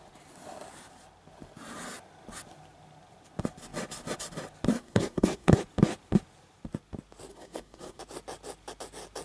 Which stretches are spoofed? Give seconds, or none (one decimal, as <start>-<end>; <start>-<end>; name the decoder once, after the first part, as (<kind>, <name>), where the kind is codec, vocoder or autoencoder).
4.7-5.6 (codec, SNAC); 7.3-8.0